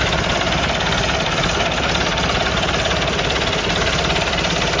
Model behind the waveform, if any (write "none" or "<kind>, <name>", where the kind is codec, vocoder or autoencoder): none